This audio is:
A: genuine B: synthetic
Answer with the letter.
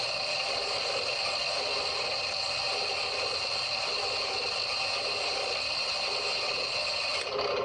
A